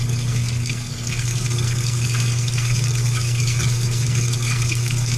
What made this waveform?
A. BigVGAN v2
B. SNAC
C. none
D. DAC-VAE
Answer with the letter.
B